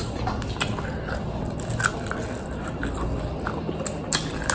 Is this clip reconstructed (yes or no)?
no